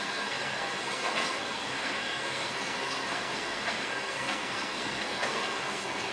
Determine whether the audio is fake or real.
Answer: fake